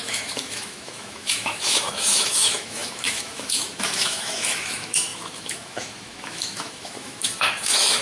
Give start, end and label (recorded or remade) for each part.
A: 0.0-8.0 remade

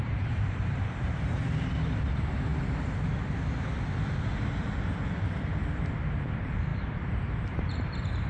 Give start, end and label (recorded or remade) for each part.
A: 0.0-2.5 remade; 2.5-5.7 recorded; 5.7-8.3 remade